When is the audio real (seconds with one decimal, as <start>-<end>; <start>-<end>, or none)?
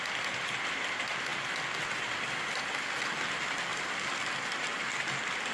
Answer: 0.0-3.7; 4.2-5.5